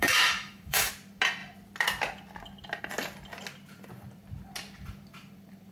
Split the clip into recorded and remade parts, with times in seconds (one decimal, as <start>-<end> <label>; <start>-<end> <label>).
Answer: 0.0-0.9 remade; 0.9-5.7 recorded